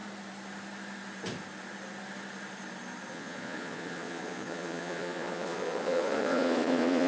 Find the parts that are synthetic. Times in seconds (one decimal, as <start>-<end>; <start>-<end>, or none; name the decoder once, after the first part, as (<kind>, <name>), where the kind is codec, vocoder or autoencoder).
3.1-7.1 (vocoder, Vocos)